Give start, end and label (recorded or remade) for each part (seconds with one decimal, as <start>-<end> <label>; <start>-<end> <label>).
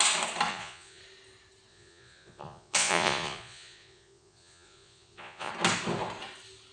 0.0-0.5 recorded; 0.5-1.0 remade; 1.0-1.7 recorded; 1.7-5.5 remade; 5.5-6.7 recorded